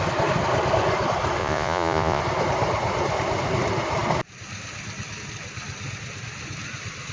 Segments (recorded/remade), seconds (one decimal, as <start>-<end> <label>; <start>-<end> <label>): 0.0-1.4 recorded; 1.4-2.2 remade; 2.2-7.1 recorded